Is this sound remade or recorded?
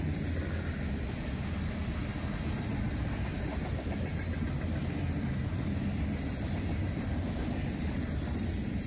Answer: recorded